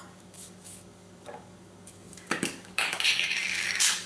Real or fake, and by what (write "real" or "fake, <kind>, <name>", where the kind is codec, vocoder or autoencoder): fake, codec, DAC